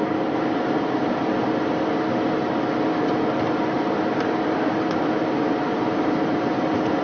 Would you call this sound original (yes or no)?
yes